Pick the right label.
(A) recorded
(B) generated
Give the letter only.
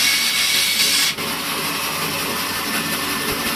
A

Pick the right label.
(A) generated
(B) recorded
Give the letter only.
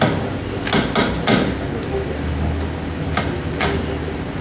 B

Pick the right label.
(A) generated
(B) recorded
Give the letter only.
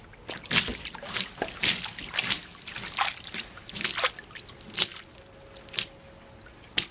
B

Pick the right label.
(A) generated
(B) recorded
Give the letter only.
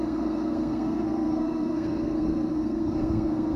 A